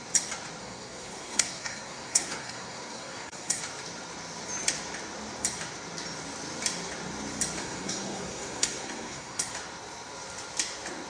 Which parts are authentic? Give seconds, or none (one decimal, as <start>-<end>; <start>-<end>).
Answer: 0.0-0.6; 3.6-7.6; 9.5-11.1